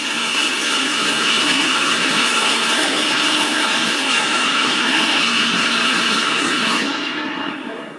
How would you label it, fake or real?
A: fake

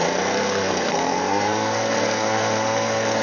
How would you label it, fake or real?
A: fake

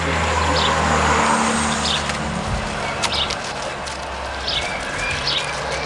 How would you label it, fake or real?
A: real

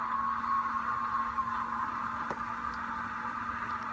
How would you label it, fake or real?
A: real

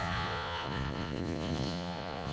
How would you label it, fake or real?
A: fake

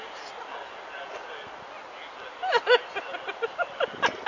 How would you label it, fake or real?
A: real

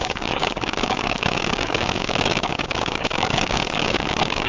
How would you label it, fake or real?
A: fake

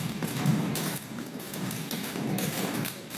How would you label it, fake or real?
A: fake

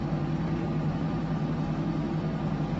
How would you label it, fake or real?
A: fake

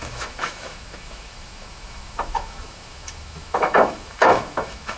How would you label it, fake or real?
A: fake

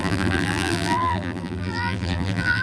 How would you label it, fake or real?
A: fake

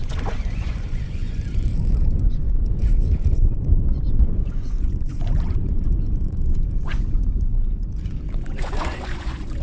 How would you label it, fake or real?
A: fake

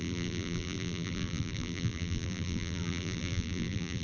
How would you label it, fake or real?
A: fake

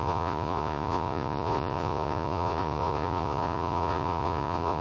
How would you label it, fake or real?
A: fake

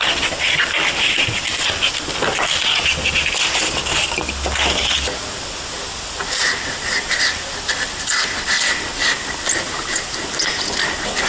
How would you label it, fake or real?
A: real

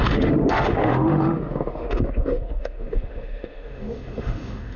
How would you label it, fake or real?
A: fake